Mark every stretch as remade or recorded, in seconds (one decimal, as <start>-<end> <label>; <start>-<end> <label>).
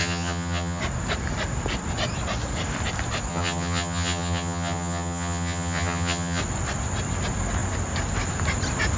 0.0-0.8 remade; 0.8-3.3 recorded; 3.3-6.4 remade; 6.4-9.0 recorded